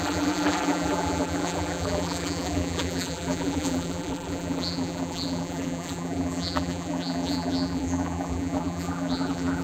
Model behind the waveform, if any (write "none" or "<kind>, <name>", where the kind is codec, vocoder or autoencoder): vocoder, BigVGAN v2